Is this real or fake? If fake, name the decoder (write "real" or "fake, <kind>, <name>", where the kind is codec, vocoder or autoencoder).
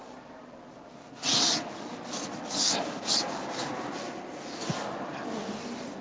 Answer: real